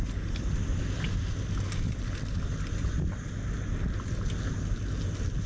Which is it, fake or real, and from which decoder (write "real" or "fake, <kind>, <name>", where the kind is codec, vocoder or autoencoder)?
real